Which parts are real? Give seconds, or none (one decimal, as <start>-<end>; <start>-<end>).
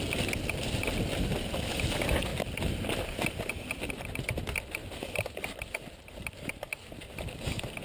0.0-2.3; 3.9-4.8; 6.8-7.8